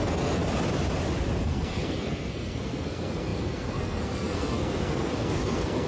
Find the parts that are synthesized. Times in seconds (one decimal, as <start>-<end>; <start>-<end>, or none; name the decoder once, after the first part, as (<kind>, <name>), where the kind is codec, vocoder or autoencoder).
0.0-0.4 (codec, SNAC); 1.4-5.9